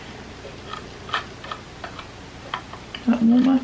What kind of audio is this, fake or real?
real